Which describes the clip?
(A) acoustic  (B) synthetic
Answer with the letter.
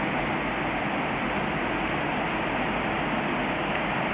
A